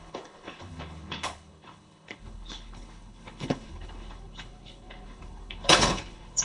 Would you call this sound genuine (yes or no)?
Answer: no